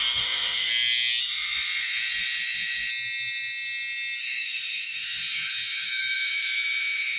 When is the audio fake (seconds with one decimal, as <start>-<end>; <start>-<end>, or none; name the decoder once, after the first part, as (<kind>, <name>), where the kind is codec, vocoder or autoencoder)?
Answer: 0.0-0.7 (autoencoder, DAC-VAE); 1.2-2.9; 4.2-7.2